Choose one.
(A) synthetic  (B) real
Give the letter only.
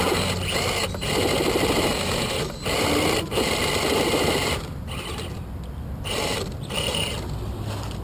B